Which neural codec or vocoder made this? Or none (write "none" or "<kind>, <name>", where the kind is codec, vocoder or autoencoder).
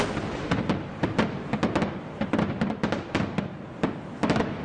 none